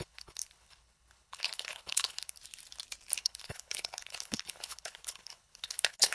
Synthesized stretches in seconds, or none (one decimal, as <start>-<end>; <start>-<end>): 0.0-2.4; 3.2-6.1

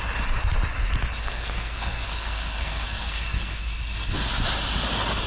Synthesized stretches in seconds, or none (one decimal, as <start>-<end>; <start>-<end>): 1.2-3.7

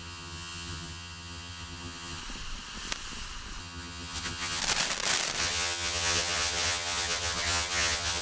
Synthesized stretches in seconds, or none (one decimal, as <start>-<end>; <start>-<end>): 0.0-2.2; 3.6-4.6; 5.4-8.2

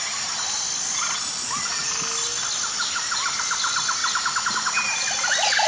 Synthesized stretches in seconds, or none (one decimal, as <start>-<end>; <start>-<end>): none

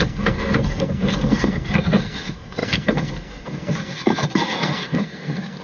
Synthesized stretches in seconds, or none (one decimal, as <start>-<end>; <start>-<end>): 0.0-5.6

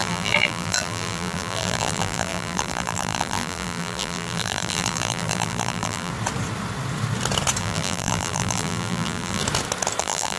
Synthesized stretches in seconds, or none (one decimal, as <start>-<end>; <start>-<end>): 0.0-6.1; 7.6-9.4; 10.0-10.4

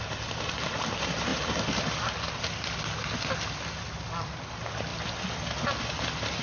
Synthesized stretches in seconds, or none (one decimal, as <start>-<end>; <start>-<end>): none